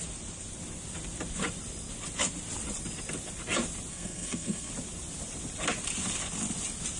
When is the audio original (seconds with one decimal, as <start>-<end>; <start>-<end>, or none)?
0.0-3.9; 4.7-7.0

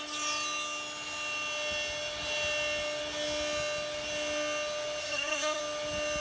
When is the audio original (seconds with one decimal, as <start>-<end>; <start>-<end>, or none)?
0.0-5.0; 5.6-6.2

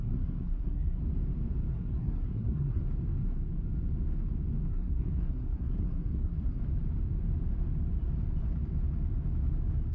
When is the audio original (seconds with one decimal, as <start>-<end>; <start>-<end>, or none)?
1.0-1.7; 2.8-4.7; 6.6-9.9

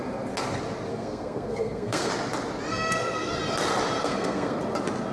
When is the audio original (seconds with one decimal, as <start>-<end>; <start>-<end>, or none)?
0.0-0.9; 2.1-2.7; 3.3-4.0; 4.6-5.1

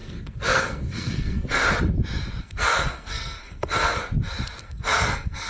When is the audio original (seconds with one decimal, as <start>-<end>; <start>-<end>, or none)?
1.6-2.4; 4.0-4.6